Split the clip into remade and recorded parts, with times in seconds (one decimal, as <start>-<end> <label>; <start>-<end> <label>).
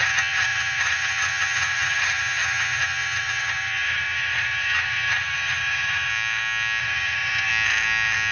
0.0-6.1 remade; 6.1-6.8 recorded; 6.8-7.5 remade; 7.5-8.3 recorded